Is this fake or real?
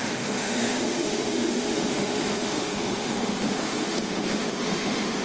fake